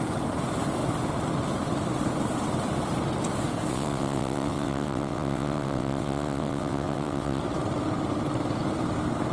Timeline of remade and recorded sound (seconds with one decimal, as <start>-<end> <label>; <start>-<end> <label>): 0.0-3.7 recorded; 3.7-7.4 remade; 7.4-9.3 recorded